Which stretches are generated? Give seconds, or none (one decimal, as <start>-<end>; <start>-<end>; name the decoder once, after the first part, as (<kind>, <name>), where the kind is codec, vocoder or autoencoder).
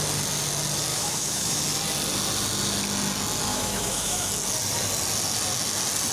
0.9-1.6 (autoencoder, DAC-VAE); 3.5-4.3